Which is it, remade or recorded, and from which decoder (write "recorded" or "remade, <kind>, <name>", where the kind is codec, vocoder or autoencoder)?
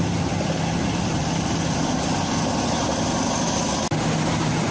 recorded